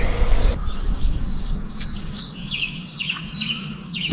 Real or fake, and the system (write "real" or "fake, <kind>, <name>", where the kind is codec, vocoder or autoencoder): fake, codec, DAC